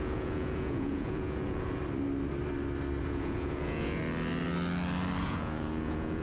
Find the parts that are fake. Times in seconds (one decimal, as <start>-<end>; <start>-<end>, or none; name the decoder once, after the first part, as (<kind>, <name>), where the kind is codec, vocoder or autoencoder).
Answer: 0.0-1.8 (vocoder, Vocos); 3.0-4.0; 5.2-6.2